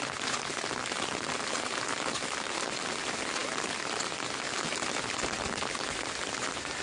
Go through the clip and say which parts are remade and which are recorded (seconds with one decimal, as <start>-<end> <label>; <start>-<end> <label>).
0.0-6.8 recorded